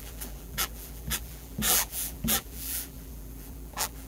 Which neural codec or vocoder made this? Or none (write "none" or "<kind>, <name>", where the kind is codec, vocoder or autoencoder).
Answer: vocoder, BigVGAN v2